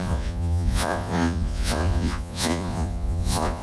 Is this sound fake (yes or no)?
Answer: yes